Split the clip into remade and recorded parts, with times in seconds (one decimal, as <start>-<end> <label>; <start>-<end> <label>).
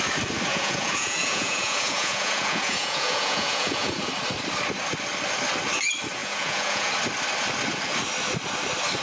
0.0-0.5 recorded; 0.5-4.1 remade; 4.1-6.2 recorded; 6.2-6.9 remade; 6.9-9.0 recorded